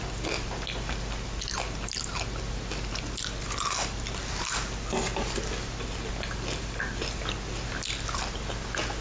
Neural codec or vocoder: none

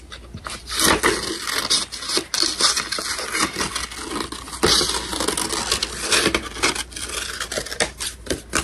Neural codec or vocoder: none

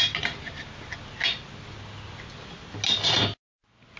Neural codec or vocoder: none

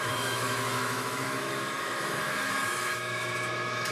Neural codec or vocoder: autoencoder, DAC-VAE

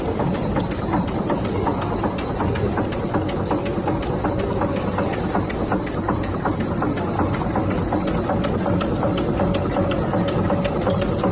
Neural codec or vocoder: none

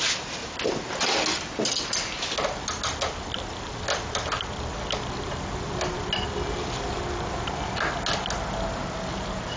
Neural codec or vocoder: none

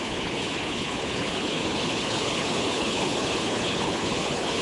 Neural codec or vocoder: codec, HILCodec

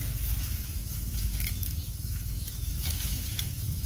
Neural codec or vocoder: autoencoder, DAC-VAE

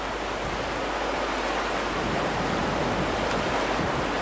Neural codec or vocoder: none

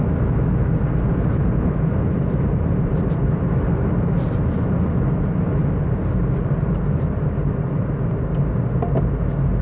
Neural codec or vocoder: none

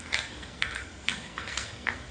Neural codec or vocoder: codec, SNAC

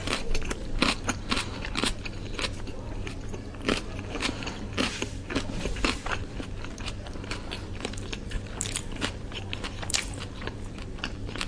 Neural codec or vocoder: vocoder, BigVGAN v2